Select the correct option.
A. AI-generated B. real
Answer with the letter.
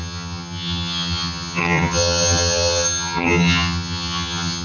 A